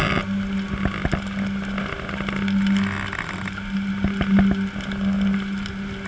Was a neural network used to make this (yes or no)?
no